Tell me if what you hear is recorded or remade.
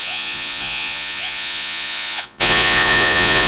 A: remade